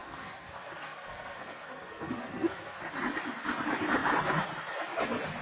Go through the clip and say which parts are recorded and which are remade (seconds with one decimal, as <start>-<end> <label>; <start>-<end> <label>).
0.0-2.8 remade; 2.8-5.4 recorded

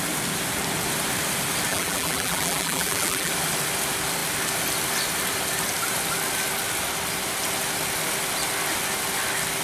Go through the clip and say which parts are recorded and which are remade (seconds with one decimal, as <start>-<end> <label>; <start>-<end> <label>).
0.0-1.7 recorded; 1.7-3.3 remade; 3.3-9.6 recorded

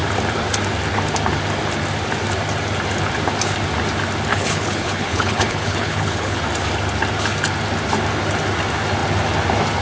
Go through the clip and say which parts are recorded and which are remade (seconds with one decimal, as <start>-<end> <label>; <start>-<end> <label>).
0.0-4.3 recorded; 4.3-6.4 remade; 6.4-9.8 recorded

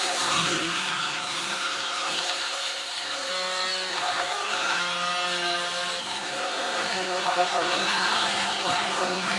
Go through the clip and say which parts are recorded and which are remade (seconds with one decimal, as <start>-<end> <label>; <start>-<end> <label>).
0.0-3.3 remade; 3.3-3.9 recorded; 3.9-4.8 remade; 4.8-6.0 recorded; 6.0-9.4 remade

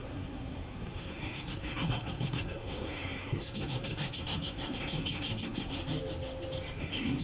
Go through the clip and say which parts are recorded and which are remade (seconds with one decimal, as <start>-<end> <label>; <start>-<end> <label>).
0.0-5.8 remade; 5.8-6.8 recorded; 6.8-7.2 remade

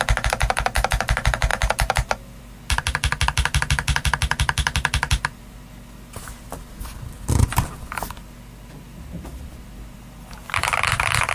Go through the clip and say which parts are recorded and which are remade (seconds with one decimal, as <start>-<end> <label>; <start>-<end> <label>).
0.0-11.3 recorded

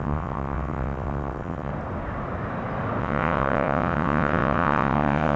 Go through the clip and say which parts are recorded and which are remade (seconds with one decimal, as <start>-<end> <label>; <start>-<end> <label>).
0.0-1.7 remade; 1.7-3.0 recorded; 3.0-5.4 remade

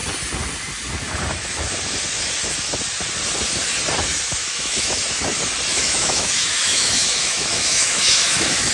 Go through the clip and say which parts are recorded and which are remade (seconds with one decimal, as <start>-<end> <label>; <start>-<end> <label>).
0.0-4.4 recorded; 4.4-5.0 remade; 5.0-5.7 recorded; 5.7-8.7 remade